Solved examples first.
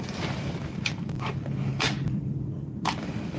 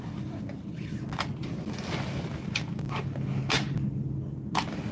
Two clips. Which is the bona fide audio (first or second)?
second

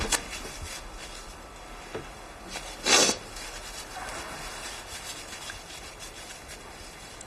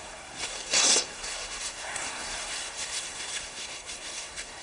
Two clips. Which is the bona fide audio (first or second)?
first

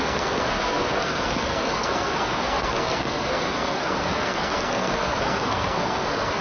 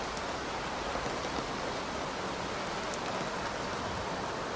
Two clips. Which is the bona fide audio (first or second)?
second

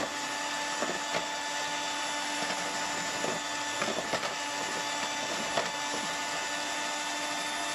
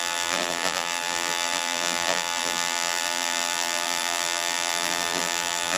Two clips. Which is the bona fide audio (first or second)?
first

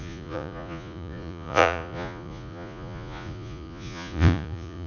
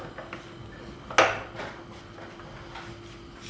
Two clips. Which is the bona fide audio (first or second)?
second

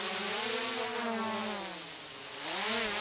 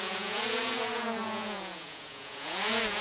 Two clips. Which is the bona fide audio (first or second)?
first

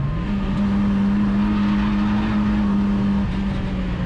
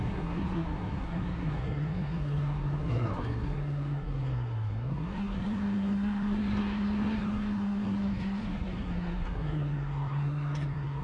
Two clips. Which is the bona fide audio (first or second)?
first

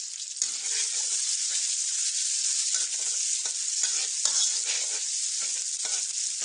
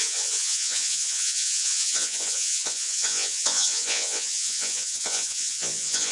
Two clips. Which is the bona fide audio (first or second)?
first